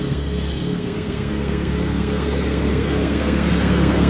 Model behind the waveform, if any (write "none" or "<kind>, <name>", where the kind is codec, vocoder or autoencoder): codec, SNAC